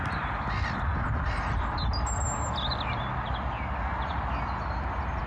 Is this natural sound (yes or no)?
yes